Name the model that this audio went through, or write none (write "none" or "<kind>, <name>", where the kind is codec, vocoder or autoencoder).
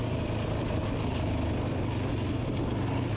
none